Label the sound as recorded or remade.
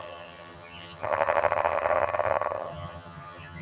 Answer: remade